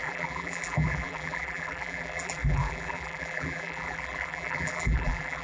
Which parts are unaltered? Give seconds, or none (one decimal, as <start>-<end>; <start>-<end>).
none